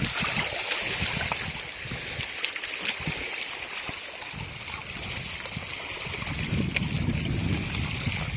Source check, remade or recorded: recorded